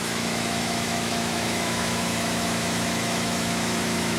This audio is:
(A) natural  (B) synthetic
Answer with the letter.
B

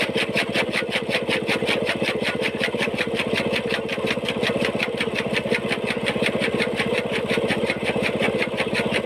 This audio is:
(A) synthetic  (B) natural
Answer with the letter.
B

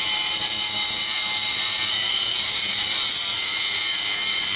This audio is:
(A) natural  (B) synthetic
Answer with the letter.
B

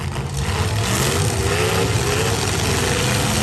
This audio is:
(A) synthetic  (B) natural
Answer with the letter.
B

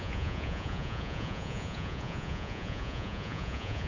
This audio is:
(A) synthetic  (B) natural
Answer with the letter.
A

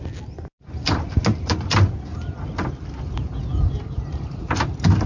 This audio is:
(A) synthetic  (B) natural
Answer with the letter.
B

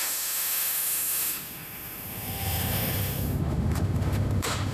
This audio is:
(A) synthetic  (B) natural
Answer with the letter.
A